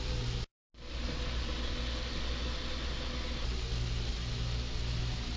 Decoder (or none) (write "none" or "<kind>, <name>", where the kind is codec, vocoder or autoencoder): none